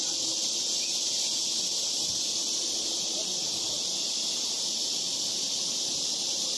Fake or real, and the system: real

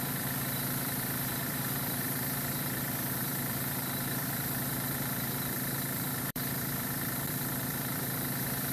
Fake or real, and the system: fake, vocoder, BigVGAN v2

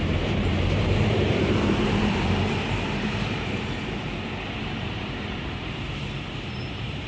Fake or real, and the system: fake, vocoder, BigVGAN v2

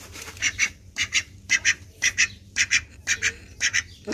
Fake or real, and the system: fake, vocoder, BigVGAN v2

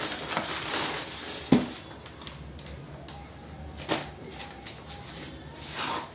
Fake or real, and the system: real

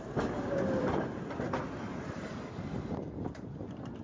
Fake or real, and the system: fake, vocoder, BigVGAN v2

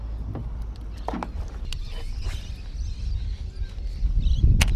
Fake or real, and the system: real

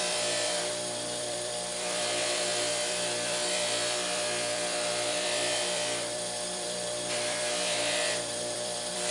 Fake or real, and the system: fake, vocoder, BigVGAN v2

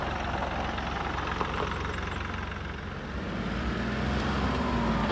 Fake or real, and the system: real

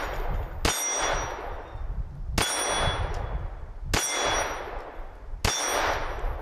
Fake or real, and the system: real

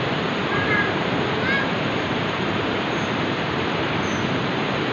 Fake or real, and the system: fake, vocoder, BigVGAN v2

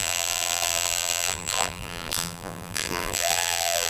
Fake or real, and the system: fake, vocoder, BigVGAN v2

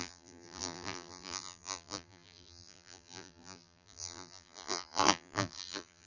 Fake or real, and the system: fake, vocoder, BigVGAN v2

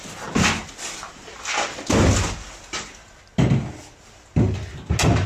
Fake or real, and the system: real